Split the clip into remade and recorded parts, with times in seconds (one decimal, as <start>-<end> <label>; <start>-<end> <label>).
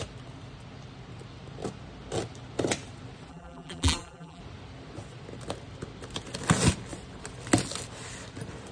0.0-3.3 recorded; 3.3-4.4 remade; 4.4-8.7 recorded